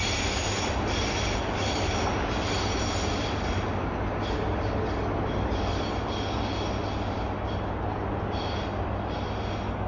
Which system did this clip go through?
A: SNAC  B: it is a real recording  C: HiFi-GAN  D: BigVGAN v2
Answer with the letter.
B